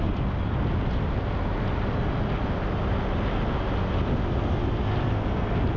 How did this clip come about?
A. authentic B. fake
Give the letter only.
A